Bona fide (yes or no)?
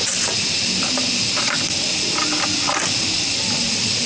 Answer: yes